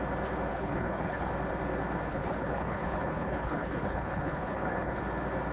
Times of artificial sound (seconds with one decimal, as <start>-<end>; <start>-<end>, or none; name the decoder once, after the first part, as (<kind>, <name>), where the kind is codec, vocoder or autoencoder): 0.5-1.3 (codec, HILCodec); 2.1-5.0